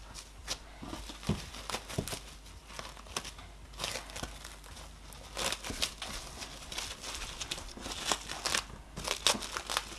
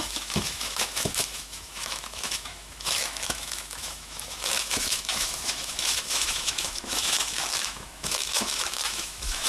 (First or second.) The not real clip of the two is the second